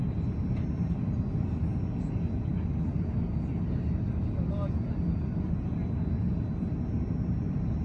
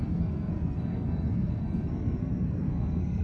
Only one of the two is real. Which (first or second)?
first